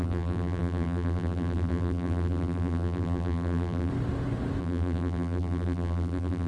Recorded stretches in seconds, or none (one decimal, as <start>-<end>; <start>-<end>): 3.9-4.6